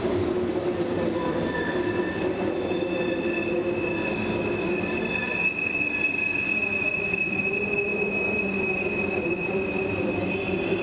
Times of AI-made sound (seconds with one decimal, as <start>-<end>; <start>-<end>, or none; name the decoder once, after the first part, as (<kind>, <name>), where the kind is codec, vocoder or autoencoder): 0.0-3.4 (vocoder, BigVGAN v2); 6.9-7.9; 8.8-10.8